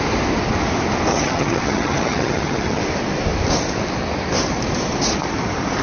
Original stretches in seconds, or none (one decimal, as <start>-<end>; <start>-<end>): 0.0-1.1; 2.8-5.8